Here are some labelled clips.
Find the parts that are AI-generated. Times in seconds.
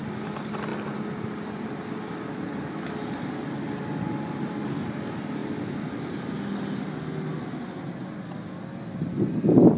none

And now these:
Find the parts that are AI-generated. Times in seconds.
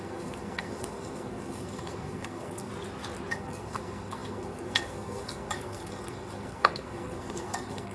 0.0-2.7 (codec, SNAC); 3.3-7.9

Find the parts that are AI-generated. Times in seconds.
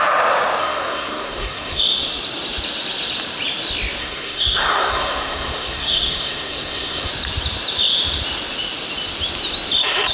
0.6-1.8 (codec, SNAC); 4.0-7.1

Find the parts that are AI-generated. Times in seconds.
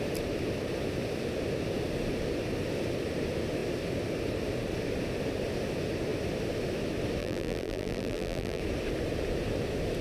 7.2-8.6 (vocoder, BigVGAN v2)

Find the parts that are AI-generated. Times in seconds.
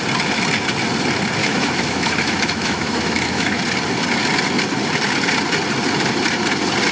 1.4-3.6 (autoencoder, DAC-VAE)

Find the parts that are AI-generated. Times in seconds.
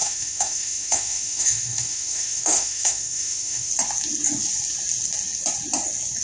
0.0-3.7 (autoencoder, DAC-VAE)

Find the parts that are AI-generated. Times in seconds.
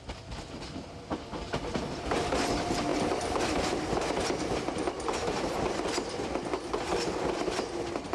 none